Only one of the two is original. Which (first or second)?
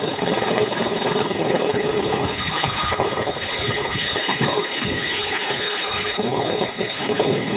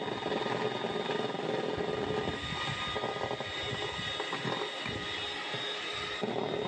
second